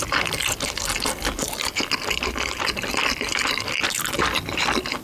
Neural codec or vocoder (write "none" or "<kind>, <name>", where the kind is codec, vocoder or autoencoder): none